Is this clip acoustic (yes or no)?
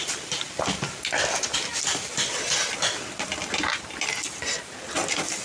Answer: yes